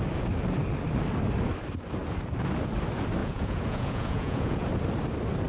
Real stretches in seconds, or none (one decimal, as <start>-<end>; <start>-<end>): 0.0-3.2; 4.7-5.5